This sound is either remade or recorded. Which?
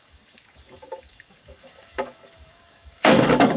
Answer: remade